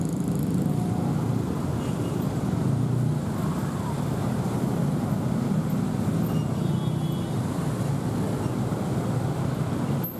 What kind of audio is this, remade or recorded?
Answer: recorded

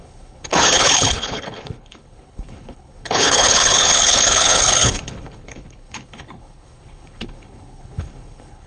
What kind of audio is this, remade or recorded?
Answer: remade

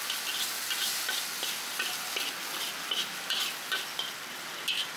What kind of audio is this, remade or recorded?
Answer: recorded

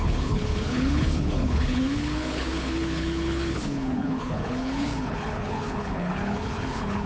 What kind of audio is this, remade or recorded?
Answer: remade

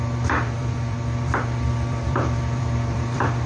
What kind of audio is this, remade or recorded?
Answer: remade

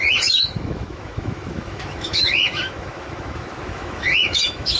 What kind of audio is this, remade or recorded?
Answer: remade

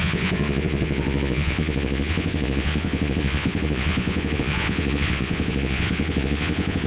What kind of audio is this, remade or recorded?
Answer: remade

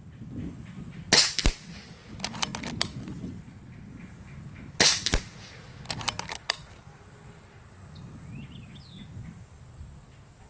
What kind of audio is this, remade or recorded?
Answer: recorded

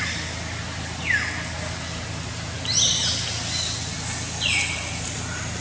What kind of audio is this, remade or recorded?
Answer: recorded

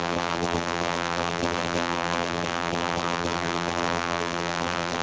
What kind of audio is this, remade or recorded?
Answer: remade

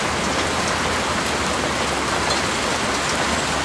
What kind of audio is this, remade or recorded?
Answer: recorded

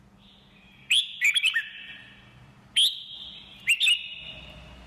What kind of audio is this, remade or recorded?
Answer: recorded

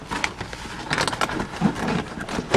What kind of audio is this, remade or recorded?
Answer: recorded